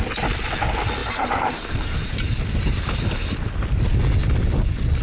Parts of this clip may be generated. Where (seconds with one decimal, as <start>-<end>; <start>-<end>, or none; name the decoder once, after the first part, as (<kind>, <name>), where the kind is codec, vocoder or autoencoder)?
1.0-4.0 (vocoder, BigVGAN v2)